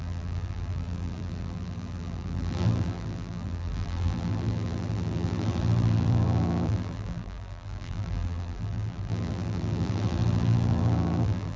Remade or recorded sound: remade